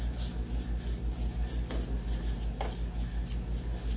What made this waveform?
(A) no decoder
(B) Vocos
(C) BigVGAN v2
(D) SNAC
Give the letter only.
A